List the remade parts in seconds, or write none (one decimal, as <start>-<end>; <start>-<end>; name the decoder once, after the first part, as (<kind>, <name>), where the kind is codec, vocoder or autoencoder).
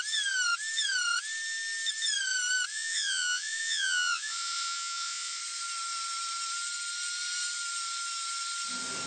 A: 2.7-5.4 (vocoder, Vocos)